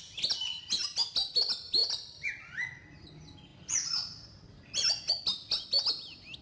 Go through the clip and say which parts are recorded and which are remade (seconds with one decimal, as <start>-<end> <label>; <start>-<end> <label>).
0.0-1.8 recorded; 1.8-2.3 remade; 2.3-6.4 recorded